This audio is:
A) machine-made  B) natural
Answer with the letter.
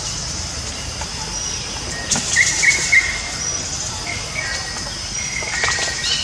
B